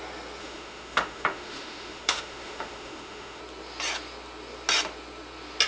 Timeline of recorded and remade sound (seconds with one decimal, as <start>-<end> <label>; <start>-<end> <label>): 0.0-0.4 recorded; 0.4-3.4 remade; 3.4-5.7 recorded

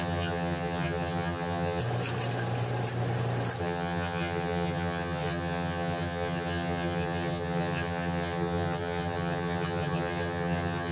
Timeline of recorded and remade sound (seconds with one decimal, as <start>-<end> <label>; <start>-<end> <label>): 0.0-1.8 remade; 1.8-3.6 recorded; 3.6-10.9 remade